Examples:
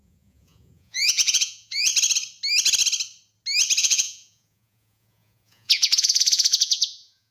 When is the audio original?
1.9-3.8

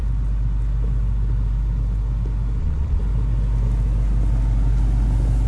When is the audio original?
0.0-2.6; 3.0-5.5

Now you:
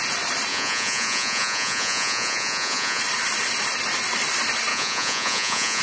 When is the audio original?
0.0-0.5; 3.0-4.7

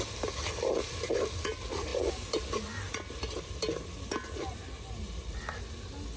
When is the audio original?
0.0-6.2